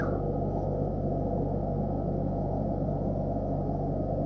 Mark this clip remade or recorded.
recorded